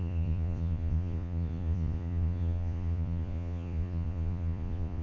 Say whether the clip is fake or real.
fake